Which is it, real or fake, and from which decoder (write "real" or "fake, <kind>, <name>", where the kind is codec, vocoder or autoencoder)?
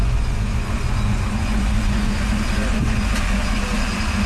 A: fake, vocoder, Vocos